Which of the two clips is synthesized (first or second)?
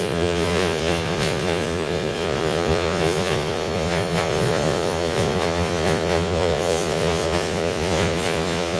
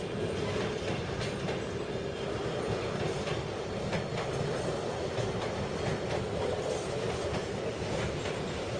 first